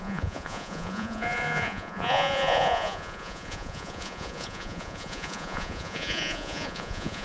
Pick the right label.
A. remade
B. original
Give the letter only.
A